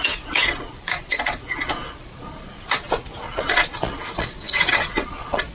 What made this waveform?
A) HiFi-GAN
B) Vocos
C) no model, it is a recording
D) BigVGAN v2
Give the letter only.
B